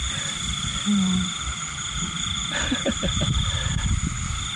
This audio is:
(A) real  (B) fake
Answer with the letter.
B